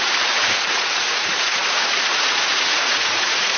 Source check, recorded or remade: remade